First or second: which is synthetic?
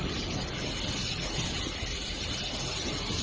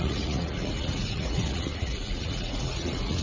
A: second